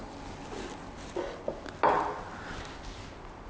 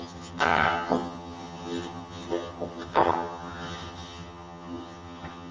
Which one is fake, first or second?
second